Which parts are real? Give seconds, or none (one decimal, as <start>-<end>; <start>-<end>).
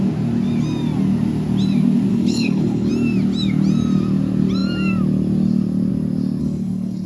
0.0-2.1; 2.9-6.4